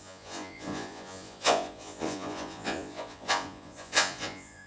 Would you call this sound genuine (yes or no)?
no